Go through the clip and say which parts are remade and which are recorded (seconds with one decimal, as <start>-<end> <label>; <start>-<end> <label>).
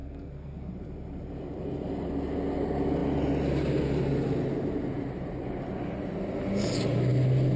0.0-0.7 remade; 0.7-7.6 recorded